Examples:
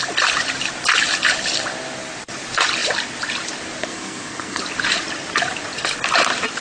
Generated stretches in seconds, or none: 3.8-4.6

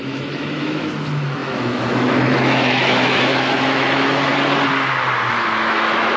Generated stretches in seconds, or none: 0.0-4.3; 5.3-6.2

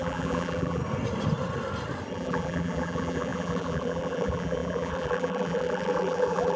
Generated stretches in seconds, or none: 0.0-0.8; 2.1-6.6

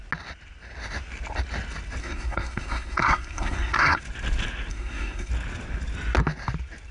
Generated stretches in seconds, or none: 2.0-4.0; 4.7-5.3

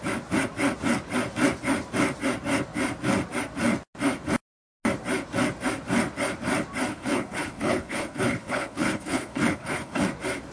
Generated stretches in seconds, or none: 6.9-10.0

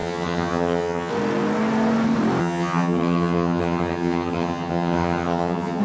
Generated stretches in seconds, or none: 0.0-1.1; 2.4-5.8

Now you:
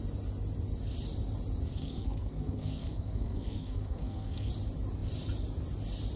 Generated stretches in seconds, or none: 1.7-4.5